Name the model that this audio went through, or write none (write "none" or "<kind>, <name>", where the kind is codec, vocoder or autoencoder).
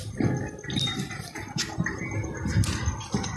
none